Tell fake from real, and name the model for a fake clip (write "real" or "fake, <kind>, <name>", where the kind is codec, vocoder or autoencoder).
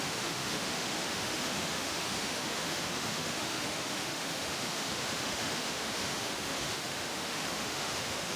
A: fake, autoencoder, DAC-VAE